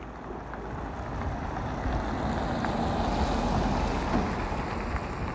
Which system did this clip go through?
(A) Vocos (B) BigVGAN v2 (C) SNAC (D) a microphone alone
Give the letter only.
D